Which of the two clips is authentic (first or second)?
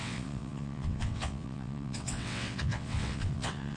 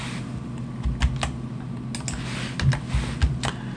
second